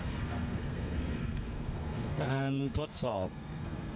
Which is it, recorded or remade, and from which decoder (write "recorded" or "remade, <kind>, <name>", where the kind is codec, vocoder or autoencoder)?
remade, codec, SNAC